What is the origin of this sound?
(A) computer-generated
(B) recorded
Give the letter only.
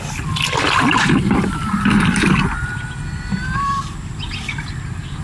B